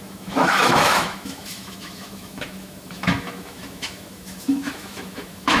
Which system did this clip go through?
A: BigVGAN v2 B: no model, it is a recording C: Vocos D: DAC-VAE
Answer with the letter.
D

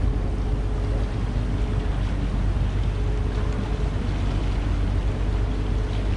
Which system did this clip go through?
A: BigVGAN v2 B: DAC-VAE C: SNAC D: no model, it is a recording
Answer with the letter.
D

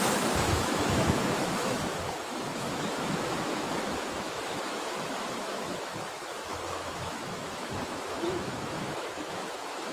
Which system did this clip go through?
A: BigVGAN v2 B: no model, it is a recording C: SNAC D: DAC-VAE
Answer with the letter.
D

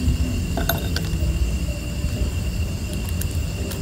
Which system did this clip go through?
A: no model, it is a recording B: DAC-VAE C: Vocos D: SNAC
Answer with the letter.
A